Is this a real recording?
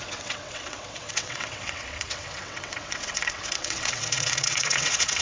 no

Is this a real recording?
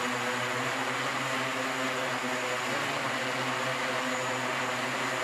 yes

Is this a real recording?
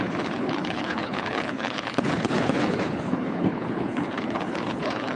no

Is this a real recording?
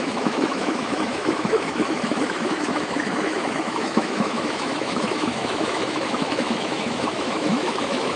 no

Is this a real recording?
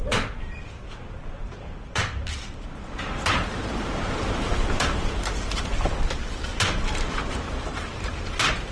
no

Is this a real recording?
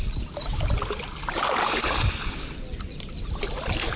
yes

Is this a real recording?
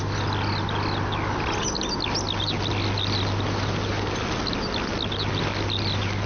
yes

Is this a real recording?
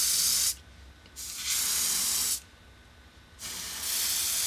yes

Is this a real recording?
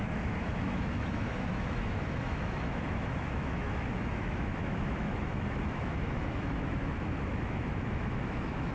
no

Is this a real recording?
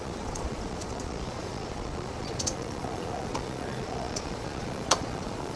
no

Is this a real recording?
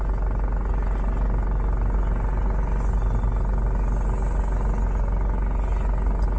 yes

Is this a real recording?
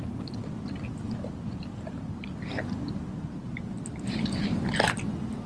yes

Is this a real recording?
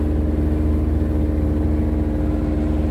yes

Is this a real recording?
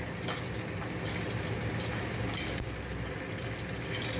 yes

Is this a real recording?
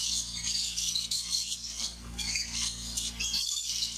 no